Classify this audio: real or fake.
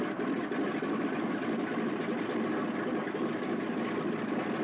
real